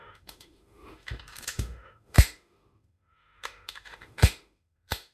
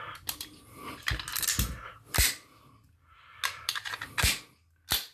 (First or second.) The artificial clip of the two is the first